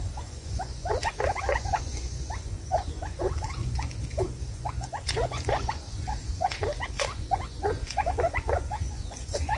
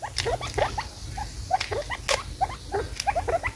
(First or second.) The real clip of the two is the second